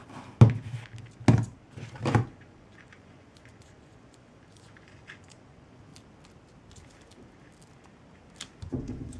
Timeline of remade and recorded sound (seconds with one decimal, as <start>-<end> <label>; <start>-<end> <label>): 0.0-2.2 recorded; 2.2-5.9 remade; 5.9-8.7 recorded; 8.7-9.2 remade